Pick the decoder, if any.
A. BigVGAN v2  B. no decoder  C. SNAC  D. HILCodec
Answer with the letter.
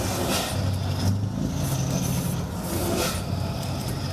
B